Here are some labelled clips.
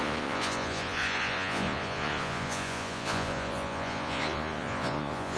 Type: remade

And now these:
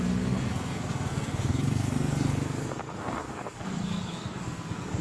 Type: remade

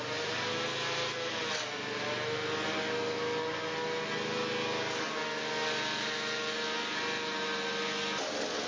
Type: recorded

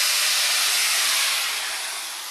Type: recorded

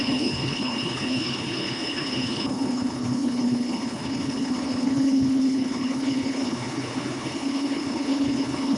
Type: remade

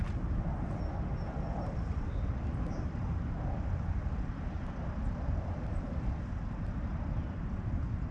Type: recorded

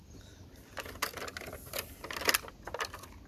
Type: recorded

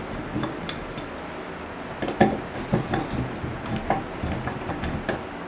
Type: recorded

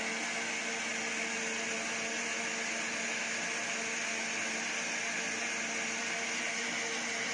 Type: recorded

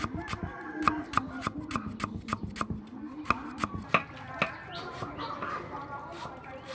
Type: recorded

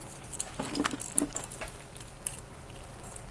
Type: recorded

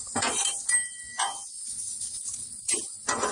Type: recorded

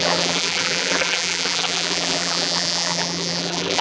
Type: remade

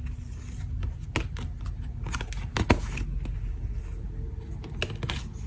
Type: recorded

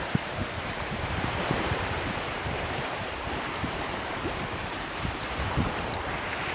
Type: remade